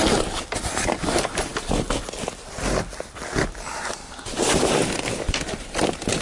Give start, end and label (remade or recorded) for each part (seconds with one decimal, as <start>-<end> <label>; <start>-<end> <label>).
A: 0.0-6.2 recorded